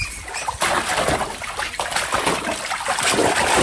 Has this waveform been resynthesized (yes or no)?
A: yes